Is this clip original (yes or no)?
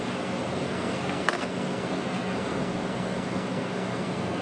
no